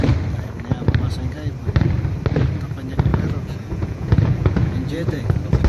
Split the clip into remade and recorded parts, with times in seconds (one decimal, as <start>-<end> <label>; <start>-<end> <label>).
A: 0.0-3.1 recorded; 3.1-5.2 remade; 5.2-5.7 recorded